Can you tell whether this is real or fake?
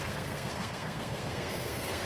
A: fake